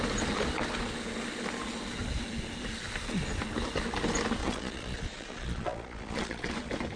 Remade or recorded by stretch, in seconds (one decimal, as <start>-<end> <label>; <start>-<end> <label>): 0.0-4.4 recorded; 4.4-6.5 remade; 6.5-7.0 recorded